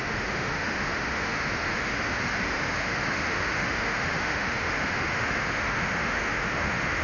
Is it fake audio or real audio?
fake